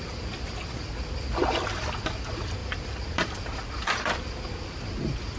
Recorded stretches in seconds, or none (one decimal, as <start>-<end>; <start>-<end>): 0.0-5.4